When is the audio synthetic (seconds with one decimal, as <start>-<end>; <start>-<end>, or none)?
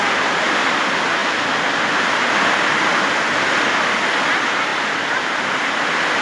none